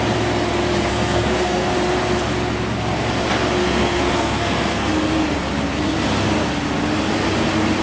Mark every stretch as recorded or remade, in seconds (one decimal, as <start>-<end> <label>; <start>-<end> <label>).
0.0-0.9 recorded; 0.9-1.7 remade; 1.7-3.6 recorded; 3.6-4.9 remade; 4.9-7.8 recorded